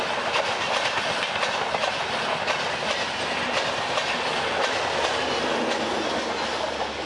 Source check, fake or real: real